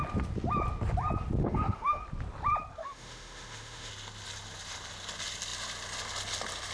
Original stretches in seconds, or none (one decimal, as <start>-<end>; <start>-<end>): 0.0-1.4; 2.0-2.8; 3.9-6.7